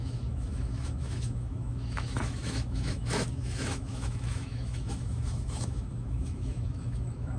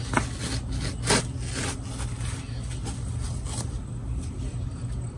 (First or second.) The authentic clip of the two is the second